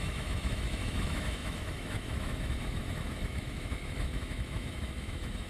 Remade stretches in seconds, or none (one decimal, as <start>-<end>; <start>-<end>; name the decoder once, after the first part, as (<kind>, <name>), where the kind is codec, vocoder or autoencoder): 0.0-5.5 (autoencoder, DAC-VAE)

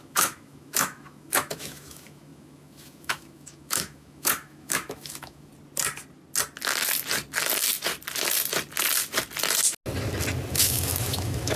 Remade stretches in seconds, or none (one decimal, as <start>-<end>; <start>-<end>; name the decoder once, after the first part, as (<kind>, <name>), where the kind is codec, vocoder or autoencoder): 0.0-5.5 (autoencoder, DAC-VAE); 10.5-11.6

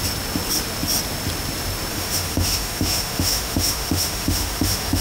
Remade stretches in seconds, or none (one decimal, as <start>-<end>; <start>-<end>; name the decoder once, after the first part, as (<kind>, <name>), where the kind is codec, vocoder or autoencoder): 1.9-5.0 (autoencoder, DAC-VAE)